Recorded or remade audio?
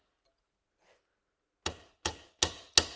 recorded